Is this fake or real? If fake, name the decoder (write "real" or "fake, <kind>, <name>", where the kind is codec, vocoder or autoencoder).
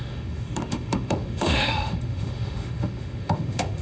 fake, autoencoder, DAC-VAE